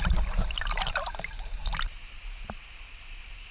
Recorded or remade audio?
recorded